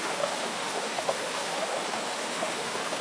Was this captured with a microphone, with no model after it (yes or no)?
no